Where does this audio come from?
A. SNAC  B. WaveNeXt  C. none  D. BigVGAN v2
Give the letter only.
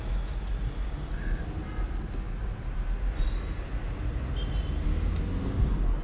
C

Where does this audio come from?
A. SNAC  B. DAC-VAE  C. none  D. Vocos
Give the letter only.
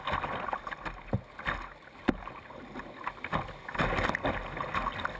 C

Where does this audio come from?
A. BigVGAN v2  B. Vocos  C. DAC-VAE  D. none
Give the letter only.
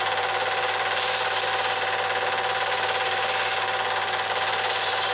D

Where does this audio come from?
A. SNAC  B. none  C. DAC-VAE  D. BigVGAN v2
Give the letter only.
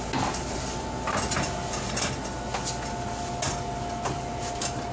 B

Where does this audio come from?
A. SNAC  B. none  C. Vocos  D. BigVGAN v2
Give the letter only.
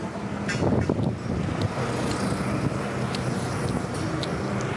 B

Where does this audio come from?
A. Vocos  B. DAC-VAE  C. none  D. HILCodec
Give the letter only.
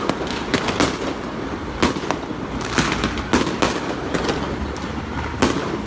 C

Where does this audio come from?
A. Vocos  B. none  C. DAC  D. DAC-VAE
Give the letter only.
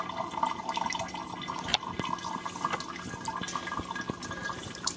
B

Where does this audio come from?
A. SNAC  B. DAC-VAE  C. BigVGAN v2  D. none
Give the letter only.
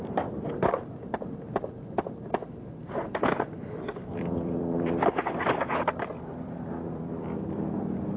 C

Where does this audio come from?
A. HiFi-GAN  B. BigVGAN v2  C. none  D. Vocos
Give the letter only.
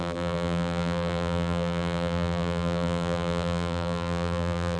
B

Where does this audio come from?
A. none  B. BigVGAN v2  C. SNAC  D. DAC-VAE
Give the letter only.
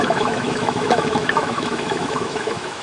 D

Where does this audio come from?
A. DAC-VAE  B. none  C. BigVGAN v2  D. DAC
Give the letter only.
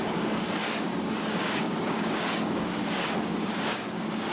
D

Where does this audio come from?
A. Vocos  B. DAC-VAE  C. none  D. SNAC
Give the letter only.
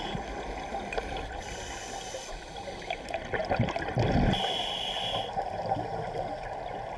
C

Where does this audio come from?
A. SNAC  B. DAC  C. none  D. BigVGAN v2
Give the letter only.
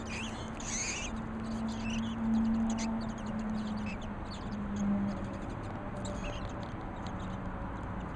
C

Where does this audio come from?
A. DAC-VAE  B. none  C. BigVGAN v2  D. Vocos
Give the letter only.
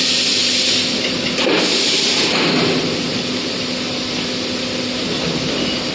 C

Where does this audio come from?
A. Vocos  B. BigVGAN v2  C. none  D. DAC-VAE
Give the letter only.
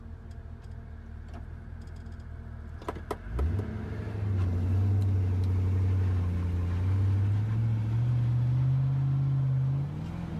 C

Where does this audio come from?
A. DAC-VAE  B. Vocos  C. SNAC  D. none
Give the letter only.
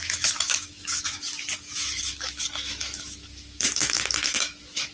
A